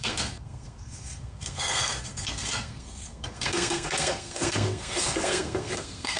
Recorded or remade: remade